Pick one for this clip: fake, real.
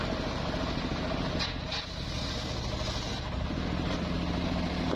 real